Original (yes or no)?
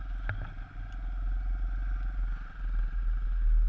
yes